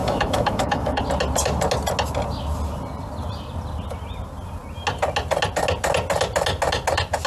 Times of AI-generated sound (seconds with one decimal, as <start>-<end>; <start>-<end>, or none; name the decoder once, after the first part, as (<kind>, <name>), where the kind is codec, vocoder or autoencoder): 0.0-1.0 (autoencoder, DAC-VAE)